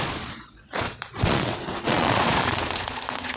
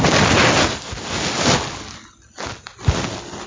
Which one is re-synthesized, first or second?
first